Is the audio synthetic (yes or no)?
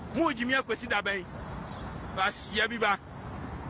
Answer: no